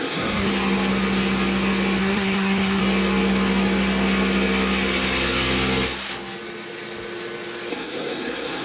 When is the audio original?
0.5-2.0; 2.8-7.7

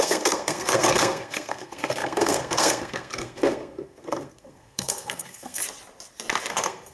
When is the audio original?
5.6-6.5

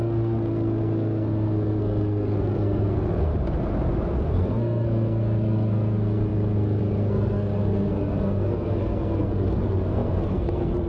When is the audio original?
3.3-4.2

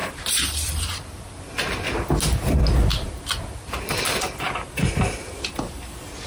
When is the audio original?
0.7-2.9; 5.3-6.3

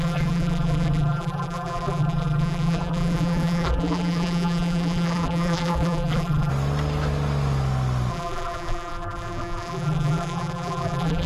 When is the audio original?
6.5-8.1

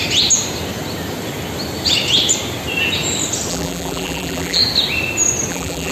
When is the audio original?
0.0-3.5; 4.6-5.5